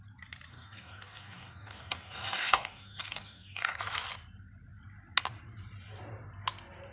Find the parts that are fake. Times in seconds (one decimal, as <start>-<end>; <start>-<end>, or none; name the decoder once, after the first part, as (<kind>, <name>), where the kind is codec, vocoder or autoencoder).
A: 0.5-3.8 (codec, DAC)